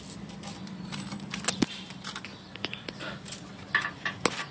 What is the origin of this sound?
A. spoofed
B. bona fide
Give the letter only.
B